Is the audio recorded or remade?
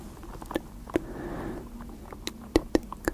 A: recorded